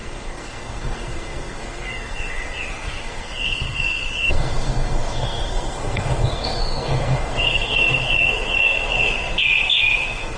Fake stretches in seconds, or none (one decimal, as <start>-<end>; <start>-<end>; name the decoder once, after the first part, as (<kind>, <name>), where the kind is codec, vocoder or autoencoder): 0.0-10.4 (codec, SNAC)